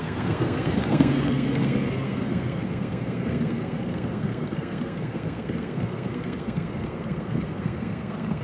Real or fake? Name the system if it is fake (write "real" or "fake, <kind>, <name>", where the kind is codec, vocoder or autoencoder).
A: fake, codec, SNAC